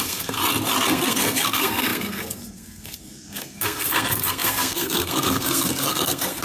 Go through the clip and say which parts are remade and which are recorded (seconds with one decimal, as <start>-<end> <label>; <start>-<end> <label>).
0.0-0.4 remade; 0.4-0.9 recorded; 0.9-6.4 remade